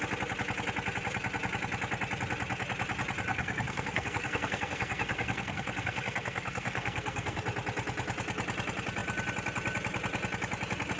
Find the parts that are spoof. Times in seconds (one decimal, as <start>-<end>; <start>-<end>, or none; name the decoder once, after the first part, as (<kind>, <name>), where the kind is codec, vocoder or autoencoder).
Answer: 3.3-7.4 (codec, SNAC)